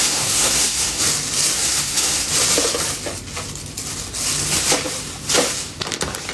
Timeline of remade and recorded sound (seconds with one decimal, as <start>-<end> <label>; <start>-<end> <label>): 0.0-1.0 remade; 1.0-1.6 recorded; 1.6-2.3 remade; 2.3-6.3 recorded